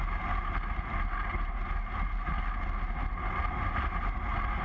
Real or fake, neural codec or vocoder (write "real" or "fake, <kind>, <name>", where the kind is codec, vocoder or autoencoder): real